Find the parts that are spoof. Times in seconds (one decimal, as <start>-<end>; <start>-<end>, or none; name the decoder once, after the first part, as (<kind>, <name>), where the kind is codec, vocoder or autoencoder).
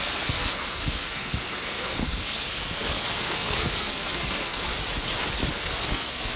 0.0-4.7 (codec, SNAC); 5.5-6.4